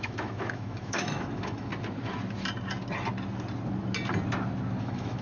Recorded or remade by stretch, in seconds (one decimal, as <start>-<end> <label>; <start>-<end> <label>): 0.0-1.7 remade; 1.7-4.8 recorded; 4.8-5.2 remade